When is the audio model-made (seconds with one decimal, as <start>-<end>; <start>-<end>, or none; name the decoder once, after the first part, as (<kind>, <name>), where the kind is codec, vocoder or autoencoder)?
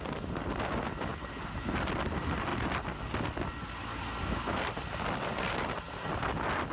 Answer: none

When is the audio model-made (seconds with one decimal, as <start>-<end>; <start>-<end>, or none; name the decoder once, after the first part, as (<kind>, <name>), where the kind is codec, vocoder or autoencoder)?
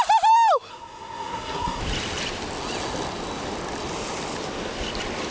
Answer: 0.7-1.8 (codec, SNAC)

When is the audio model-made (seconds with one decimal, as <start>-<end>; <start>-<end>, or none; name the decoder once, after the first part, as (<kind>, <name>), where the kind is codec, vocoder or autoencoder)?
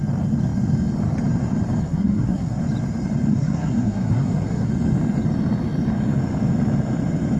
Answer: 1.8-2.6 (codec, SNAC); 3.3-4.7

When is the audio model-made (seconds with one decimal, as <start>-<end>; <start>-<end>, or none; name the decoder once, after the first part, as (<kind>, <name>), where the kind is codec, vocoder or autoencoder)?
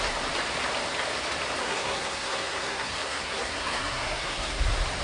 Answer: 1.6-4.6 (codec, SNAC)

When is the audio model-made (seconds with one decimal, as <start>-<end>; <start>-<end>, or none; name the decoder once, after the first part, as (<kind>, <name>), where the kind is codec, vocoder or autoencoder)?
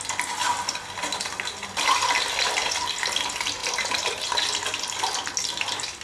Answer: none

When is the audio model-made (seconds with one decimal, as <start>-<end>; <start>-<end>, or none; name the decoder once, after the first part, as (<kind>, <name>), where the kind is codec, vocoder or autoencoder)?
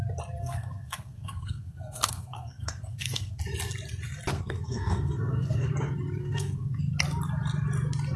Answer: 0.4-3.4 (codec, SNAC); 4.3-5.7; 6.2-6.8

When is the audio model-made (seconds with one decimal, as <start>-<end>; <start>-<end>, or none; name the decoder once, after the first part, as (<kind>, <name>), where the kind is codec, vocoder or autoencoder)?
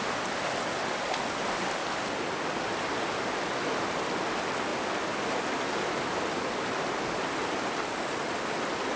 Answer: none